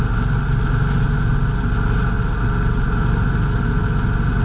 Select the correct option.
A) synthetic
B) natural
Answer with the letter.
B